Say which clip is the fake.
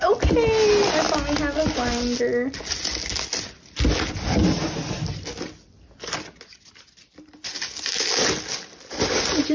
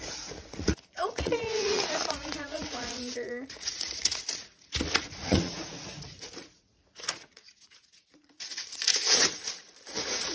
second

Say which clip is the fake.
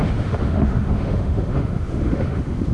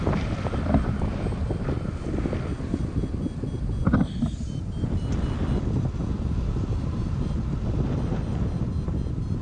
first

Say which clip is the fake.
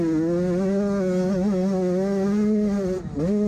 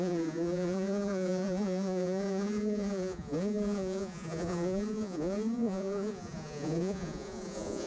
second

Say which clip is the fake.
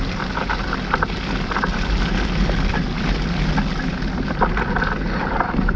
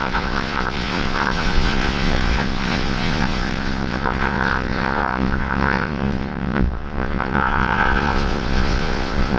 second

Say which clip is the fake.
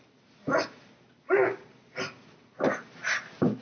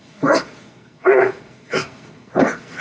second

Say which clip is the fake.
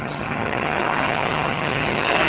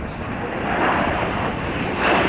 first